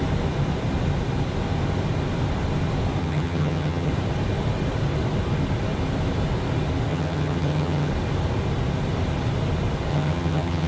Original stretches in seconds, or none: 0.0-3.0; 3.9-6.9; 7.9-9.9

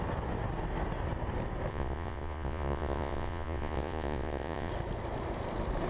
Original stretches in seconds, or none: 0.0-1.7; 4.7-5.9

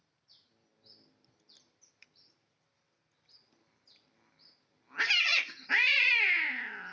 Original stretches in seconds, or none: 0.0-6.9

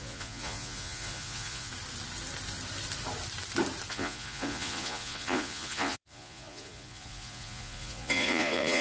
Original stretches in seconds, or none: 1.7-3.9

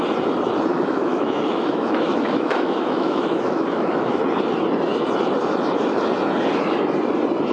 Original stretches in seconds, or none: 0.0-0.7; 4.2-7.5

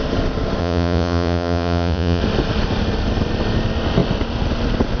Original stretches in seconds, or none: 0.0-0.6; 2.2-5.0